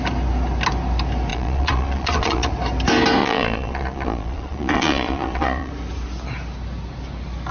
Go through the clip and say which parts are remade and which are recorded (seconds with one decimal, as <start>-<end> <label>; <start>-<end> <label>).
0.0-1.3 recorded; 1.3-2.5 remade; 2.5-3.2 recorded; 3.2-5.7 remade; 5.7-7.5 recorded